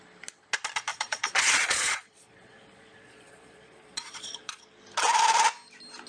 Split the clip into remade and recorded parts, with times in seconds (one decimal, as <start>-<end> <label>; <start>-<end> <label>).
0.0-0.9 recorded; 0.9-4.6 remade; 4.6-6.1 recorded